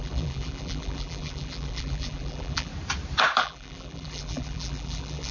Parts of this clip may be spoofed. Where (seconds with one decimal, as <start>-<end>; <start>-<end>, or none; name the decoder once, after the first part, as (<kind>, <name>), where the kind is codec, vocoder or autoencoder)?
0.0-2.7 (vocoder, BigVGAN v2); 3.4-5.3